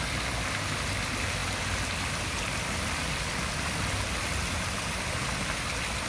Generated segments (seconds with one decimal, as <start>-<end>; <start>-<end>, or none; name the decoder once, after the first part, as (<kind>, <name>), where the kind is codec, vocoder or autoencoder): none